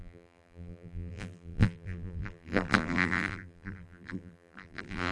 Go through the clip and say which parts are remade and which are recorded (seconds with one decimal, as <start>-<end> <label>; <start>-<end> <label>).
0.0-5.1 remade